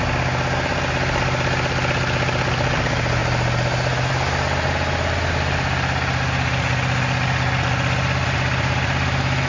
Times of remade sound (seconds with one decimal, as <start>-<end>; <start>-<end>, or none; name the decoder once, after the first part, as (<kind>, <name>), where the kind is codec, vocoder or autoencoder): none